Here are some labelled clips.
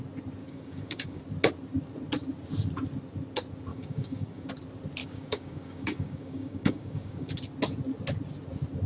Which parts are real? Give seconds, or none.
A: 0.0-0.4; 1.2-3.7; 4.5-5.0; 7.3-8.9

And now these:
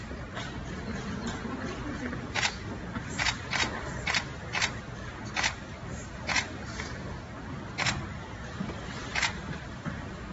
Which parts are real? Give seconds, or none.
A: 0.0-10.3